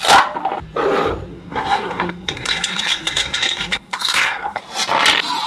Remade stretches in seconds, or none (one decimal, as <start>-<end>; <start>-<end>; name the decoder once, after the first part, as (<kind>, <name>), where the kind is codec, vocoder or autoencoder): 1.3-4.6 (codec, SNAC)